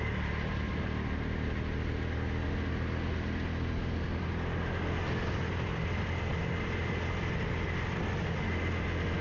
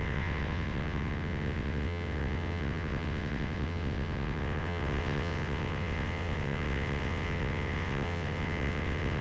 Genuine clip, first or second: first